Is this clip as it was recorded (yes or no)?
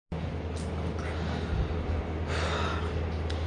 yes